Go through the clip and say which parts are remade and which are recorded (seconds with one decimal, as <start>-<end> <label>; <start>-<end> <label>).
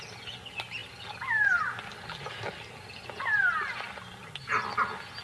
0.0-5.2 recorded